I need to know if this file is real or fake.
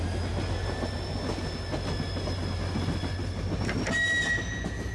real